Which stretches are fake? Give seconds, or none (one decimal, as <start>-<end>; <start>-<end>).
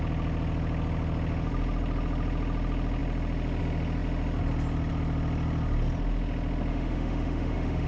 6.7-7.9